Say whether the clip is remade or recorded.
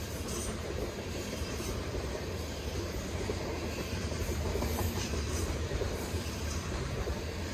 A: remade